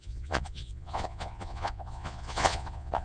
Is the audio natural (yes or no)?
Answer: no